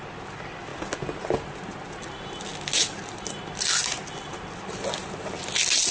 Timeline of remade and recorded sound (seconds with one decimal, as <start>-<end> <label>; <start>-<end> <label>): 0.0-5.9 recorded